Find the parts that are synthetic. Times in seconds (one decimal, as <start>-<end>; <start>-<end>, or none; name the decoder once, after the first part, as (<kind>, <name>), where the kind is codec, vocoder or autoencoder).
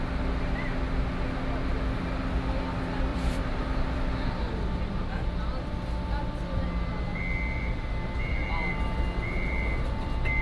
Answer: 3.1-5.1 (vocoder, BigVGAN v2)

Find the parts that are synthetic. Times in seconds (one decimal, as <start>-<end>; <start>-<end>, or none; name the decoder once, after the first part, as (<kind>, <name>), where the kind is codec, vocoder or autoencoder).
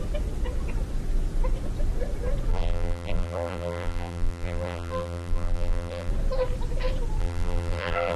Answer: 2.5-6.1 (vocoder, BigVGAN v2); 7.2-8.2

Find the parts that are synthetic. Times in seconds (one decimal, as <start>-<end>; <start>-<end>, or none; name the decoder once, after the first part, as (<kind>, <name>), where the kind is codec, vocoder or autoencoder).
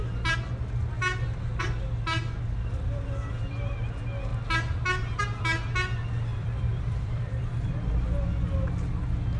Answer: 6.3-7.7 (vocoder, BigVGAN v2)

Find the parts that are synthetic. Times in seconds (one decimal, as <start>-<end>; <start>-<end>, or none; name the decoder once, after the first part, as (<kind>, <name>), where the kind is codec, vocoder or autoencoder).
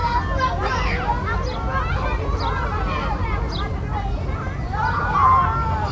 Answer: none